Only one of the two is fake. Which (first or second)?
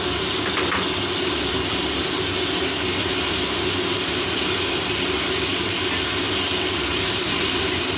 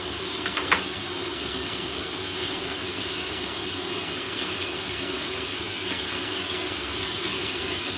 second